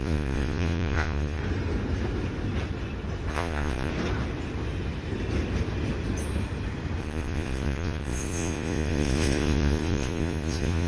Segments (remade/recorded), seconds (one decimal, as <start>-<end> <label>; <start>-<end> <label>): 0.0-1.4 remade; 1.4-3.3 recorded; 3.3-3.9 remade; 3.9-7.0 recorded; 7.0-10.9 remade